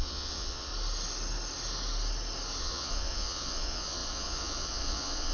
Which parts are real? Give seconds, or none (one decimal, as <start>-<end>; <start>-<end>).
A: 0.7-2.6